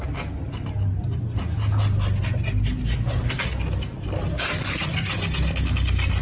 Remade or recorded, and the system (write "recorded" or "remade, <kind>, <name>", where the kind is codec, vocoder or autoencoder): recorded